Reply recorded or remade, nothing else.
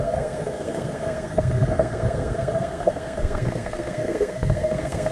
remade